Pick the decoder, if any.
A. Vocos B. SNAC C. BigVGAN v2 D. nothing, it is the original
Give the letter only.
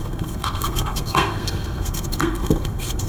B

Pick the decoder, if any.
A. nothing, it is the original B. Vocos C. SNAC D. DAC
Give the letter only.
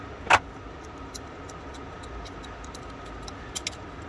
A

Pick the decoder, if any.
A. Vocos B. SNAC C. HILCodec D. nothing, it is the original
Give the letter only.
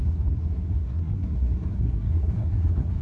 B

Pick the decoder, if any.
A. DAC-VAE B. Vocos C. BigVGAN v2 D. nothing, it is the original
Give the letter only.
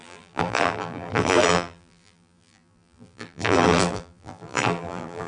C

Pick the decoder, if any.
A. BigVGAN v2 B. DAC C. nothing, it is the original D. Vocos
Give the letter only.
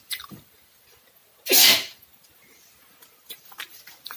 C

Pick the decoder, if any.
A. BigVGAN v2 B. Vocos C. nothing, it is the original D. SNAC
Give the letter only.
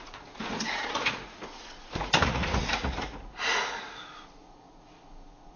B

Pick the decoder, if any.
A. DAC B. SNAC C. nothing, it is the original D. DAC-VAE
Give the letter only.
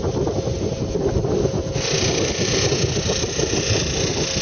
C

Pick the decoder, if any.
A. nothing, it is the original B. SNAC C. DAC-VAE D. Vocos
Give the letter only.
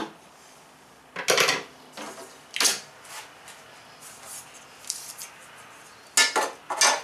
A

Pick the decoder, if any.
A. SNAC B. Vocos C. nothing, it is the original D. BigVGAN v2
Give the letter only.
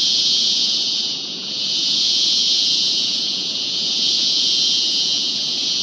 B